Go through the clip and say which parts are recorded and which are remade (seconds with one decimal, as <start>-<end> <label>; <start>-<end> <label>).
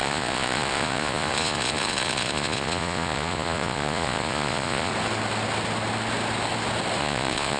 0.0-4.9 remade; 4.9-7.0 recorded; 7.0-7.6 remade